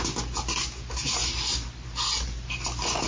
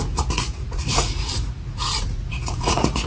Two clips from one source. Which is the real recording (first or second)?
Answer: first